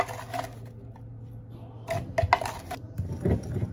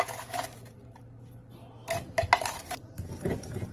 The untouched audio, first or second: first